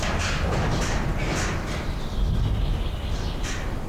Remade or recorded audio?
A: recorded